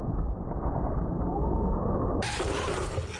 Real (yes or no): yes